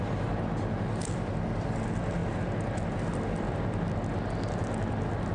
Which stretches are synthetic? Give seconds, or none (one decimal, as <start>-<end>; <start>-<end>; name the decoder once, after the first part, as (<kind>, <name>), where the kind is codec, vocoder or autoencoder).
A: none